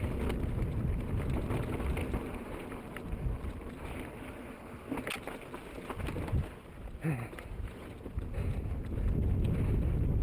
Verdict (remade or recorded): recorded